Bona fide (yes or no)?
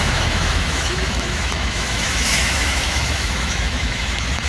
no